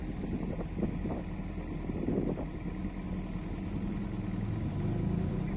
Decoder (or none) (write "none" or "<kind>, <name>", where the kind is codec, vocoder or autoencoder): none